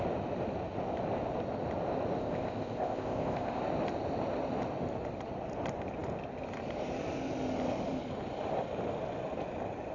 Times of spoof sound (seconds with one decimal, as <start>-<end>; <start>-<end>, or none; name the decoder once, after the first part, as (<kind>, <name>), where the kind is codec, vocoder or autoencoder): 2.2-3.6 (codec, ZipCodec)